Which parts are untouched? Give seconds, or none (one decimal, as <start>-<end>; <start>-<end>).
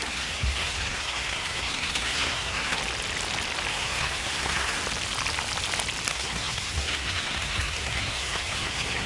2.8-3.7; 4.8-6.1